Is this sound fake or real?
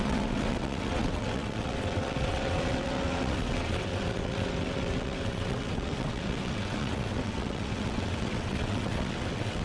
fake